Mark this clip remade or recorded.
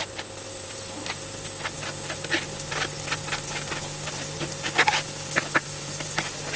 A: recorded